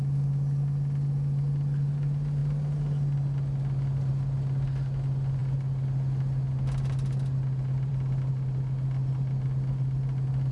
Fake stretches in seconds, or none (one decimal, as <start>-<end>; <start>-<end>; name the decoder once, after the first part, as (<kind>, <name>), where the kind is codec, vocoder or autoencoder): none